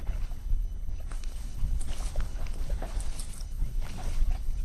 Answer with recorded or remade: remade